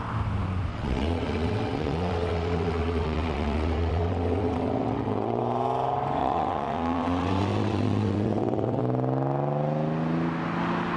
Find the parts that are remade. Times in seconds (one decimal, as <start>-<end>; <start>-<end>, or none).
0.7-5.4; 6.2-8.8

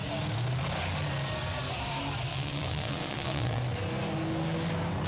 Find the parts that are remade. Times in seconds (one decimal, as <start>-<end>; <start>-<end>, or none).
2.3-3.6

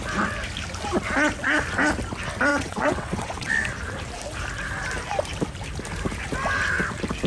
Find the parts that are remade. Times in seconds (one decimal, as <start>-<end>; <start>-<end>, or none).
2.5-3.5

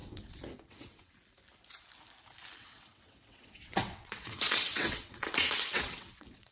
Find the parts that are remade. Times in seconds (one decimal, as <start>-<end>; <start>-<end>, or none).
0.0-1.1; 2.6-6.5

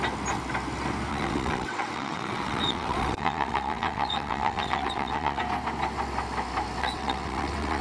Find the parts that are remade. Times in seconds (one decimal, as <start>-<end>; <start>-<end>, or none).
1.1-5.4; 6.8-7.8

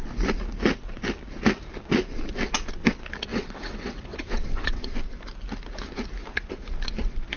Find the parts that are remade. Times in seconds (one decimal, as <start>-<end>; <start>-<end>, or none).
3.3-4.8